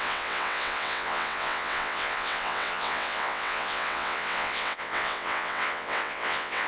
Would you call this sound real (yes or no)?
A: no